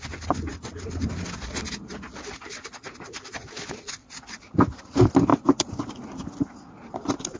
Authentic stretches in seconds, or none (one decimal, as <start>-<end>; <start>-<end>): 0.0-7.4